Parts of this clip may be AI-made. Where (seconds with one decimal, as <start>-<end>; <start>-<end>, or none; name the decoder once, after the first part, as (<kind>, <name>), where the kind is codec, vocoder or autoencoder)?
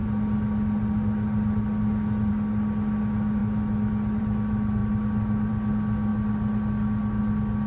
none